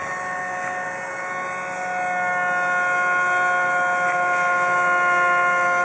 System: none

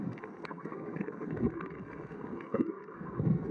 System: codec, SNAC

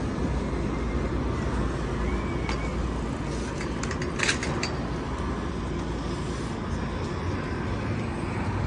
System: none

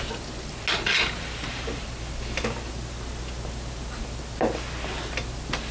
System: none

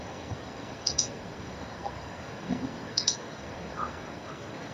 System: codec, SNAC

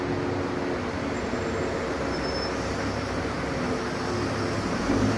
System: none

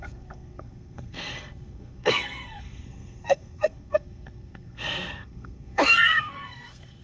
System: codec, SNAC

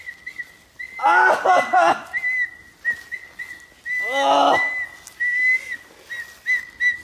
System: none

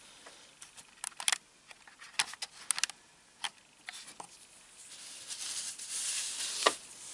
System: none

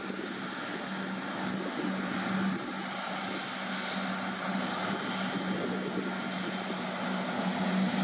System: none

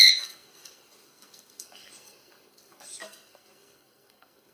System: codec, SNAC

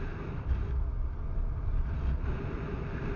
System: none